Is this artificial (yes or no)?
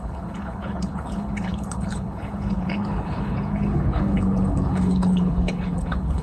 yes